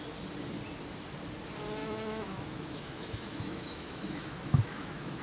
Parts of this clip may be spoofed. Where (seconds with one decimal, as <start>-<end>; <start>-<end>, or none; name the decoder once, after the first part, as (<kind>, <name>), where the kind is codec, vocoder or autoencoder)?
1.8-5.2 (autoencoder, DAC-VAE)